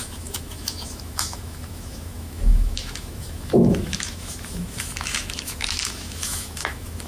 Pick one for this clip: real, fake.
fake